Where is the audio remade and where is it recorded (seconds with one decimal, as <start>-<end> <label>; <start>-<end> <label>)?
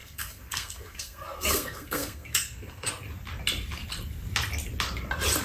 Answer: 0.0-2.9 remade; 2.9-5.4 recorded